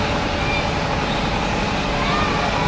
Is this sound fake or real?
real